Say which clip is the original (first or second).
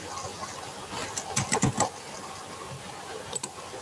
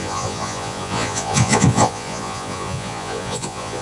first